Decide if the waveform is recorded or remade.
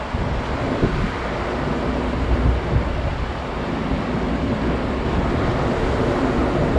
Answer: recorded